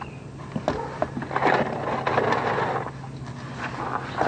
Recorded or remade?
recorded